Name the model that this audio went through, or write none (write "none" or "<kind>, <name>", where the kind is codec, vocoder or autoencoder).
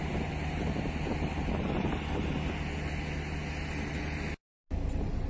none